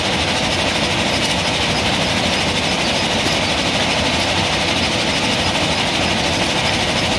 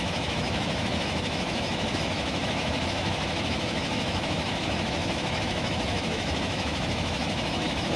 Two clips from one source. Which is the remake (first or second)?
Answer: second